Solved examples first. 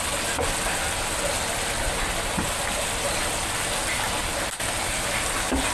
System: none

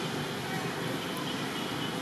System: none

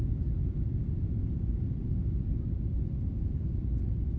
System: none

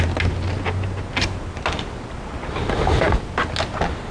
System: none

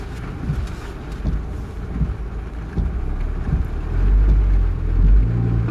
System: none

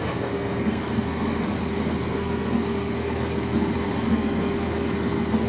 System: codec, SNAC